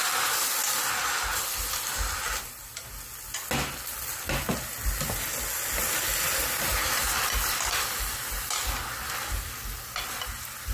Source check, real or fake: real